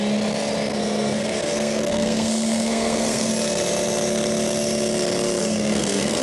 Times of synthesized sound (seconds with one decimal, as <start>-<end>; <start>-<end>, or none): 0.7-3.3; 5.4-6.2